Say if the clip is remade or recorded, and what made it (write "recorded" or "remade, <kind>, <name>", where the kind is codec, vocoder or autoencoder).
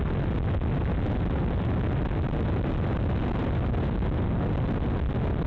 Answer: recorded